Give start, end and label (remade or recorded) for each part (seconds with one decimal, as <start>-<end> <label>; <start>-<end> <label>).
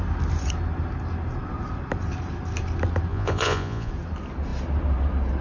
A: 0.0-3.1 recorded; 3.1-3.9 remade; 3.9-5.4 recorded